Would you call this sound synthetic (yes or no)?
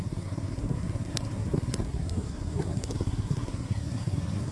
yes